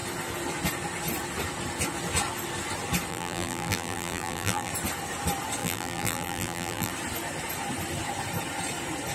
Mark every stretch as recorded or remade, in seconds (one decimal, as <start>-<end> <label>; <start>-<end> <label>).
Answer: 0.0-3.1 recorded; 3.1-4.7 remade; 4.7-5.6 recorded; 5.6-6.9 remade; 6.9-9.1 recorded